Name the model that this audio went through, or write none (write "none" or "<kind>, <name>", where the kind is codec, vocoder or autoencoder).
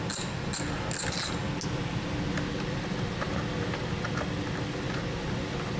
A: none